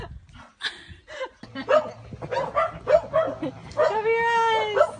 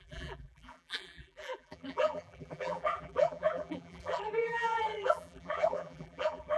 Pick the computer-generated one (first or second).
second